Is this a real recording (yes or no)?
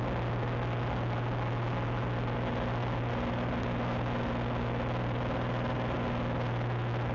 yes